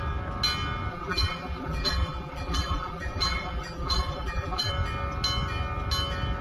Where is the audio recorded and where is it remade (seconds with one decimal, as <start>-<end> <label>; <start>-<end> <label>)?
0.0-0.9 recorded; 0.9-4.7 remade; 4.7-6.4 recorded